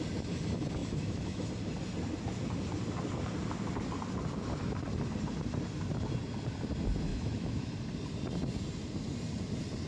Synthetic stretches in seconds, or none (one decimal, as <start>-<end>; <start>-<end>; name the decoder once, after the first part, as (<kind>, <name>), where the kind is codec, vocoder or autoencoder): 0.8-1.5 (autoencoder, DAC-VAE); 7.1-7.7